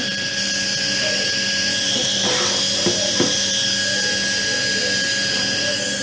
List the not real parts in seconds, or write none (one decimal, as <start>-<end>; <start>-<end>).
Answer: none